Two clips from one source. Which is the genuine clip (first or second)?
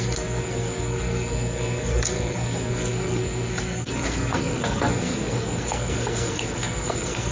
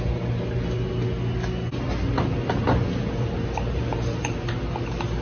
second